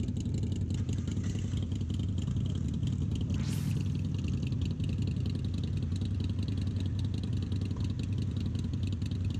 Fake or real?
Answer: real